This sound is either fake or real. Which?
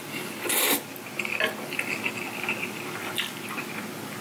real